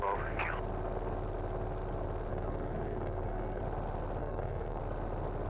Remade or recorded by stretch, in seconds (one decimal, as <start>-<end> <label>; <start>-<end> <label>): 0.0-2.3 recorded; 2.3-3.6 remade; 3.6-4.2 recorded; 4.2-4.8 remade; 4.8-5.5 recorded